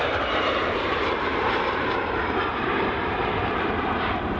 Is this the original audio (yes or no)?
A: no